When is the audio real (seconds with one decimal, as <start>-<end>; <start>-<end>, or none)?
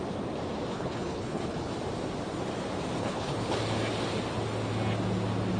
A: 0.0-0.7; 1.7-3.0; 3.6-5.6